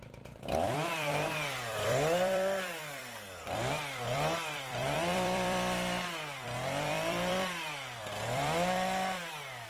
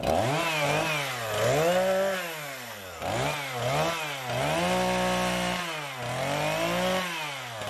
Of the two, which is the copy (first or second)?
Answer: first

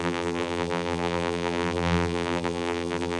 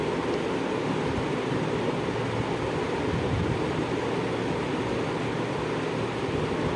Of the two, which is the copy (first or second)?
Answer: first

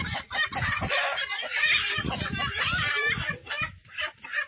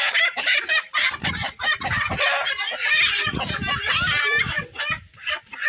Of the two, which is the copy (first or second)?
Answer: first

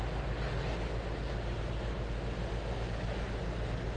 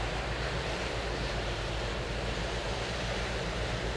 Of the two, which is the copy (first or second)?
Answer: second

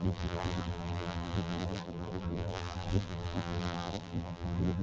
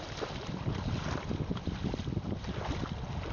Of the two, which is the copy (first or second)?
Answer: first